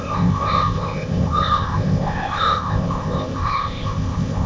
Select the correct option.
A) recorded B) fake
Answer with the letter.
B